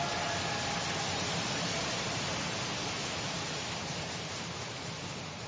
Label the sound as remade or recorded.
recorded